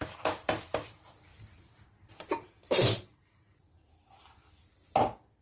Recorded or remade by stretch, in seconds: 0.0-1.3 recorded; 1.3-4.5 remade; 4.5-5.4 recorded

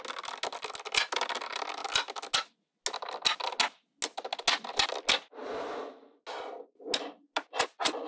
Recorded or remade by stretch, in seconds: 0.0-8.1 recorded

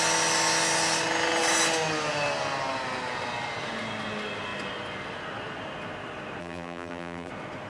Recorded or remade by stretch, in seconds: 0.0-6.4 recorded; 6.4-7.3 remade; 7.3-7.7 recorded

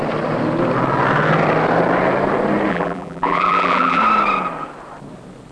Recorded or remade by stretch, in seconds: 0.0-2.7 recorded; 2.7-4.0 remade; 4.0-5.5 recorded

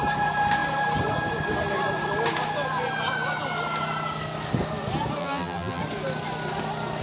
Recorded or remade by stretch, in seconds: 0.0-5.2 recorded; 5.2-5.8 remade; 5.8-7.0 recorded

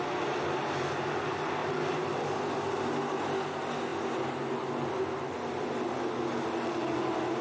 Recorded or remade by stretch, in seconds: 0.0-1.6 recorded; 1.6-2.2 remade; 2.2-7.4 recorded

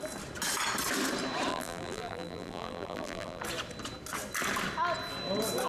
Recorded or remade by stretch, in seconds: 0.0-1.5 recorded; 1.5-3.4 remade; 3.4-5.7 recorded

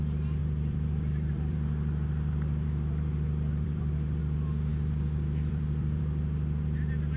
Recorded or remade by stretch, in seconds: 0.0-0.4 recorded; 0.4-4.2 remade; 4.2-4.7 recorded; 4.7-6.0 remade; 6.0-7.2 recorded